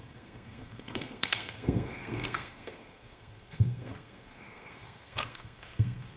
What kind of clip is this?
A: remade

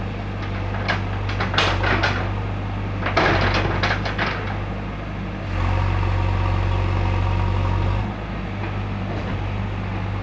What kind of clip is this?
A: recorded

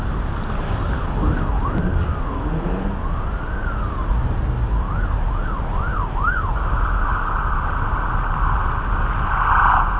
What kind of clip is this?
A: recorded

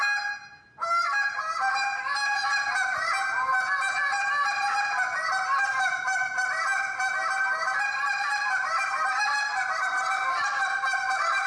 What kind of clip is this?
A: recorded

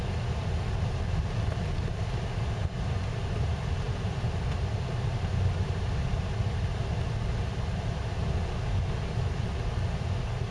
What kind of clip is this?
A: recorded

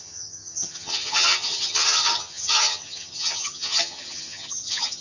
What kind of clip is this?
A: remade